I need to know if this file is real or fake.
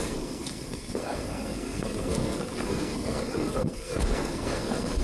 fake